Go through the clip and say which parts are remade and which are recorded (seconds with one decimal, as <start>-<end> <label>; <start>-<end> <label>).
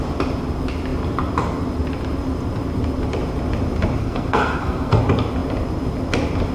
0.0-4.0 recorded; 4.0-5.0 remade; 5.0-6.5 recorded